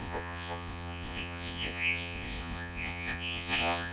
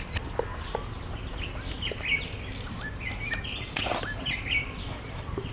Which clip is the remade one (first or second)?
first